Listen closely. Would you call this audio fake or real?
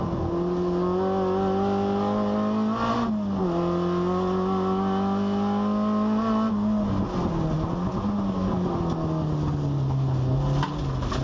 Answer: real